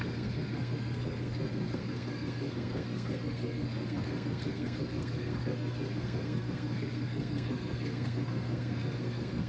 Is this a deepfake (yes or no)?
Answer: yes